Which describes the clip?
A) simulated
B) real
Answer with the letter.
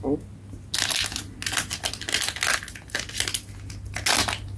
B